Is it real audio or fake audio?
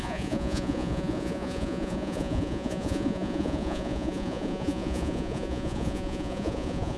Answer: fake